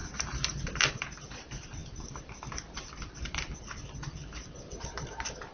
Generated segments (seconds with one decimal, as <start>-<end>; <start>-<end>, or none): 0.0-5.5